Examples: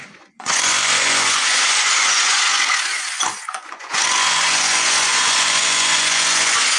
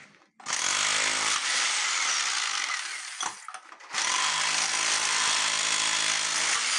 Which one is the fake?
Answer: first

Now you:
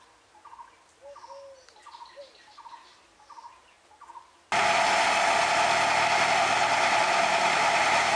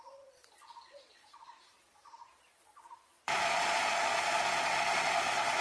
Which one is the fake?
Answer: second